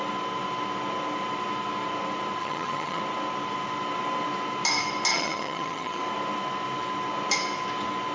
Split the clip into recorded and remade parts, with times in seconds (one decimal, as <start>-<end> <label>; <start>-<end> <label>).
0.0-2.4 recorded; 2.4-3.0 remade; 3.0-5.1 recorded; 5.1-6.0 remade; 6.0-8.1 recorded